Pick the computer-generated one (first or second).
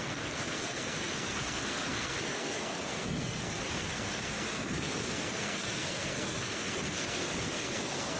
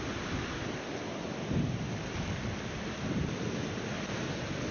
first